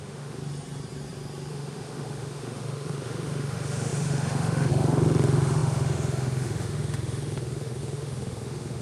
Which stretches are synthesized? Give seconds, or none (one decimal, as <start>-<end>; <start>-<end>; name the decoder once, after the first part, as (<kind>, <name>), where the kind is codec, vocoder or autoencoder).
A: 0.0-0.4 (autoencoder, DAC-VAE); 1.5-8.8